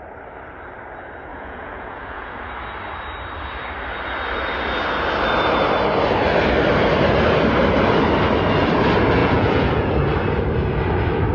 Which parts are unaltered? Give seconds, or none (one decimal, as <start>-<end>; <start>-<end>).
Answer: 0.0-1.3; 2.5-9.2; 9.9-11.3